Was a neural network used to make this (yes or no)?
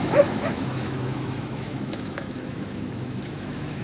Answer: yes